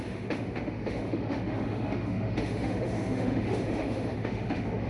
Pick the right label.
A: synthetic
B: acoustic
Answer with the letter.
A